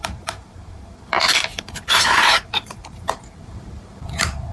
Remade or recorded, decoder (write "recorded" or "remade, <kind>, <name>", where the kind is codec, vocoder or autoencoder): remade, vocoder, BigVGAN v2